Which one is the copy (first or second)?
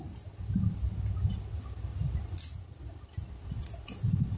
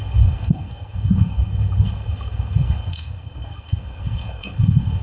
second